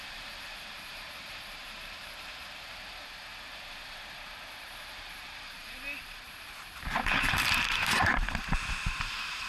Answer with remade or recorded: remade